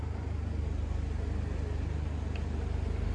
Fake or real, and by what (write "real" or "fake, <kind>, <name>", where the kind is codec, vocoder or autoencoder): real